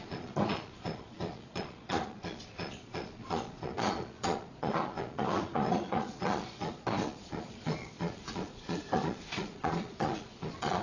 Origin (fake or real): fake